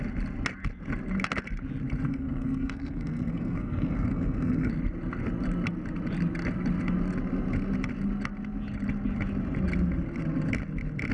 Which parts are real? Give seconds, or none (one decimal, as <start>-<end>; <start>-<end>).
0.0-2.1; 4.7-11.1